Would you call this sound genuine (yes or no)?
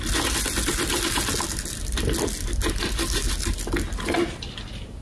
yes